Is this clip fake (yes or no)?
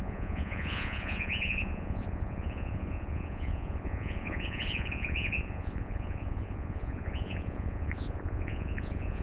yes